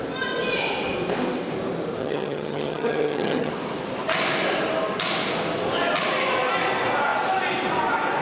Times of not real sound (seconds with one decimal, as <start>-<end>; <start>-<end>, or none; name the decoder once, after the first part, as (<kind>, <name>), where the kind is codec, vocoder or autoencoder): 2.0-3.5 (vocoder, HiFi-GAN)